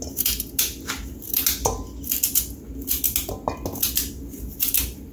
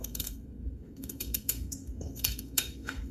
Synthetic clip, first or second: second